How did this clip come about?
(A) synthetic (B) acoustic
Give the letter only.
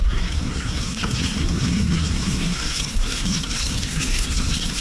A